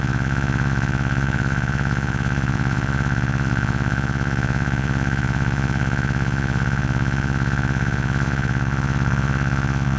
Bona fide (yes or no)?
no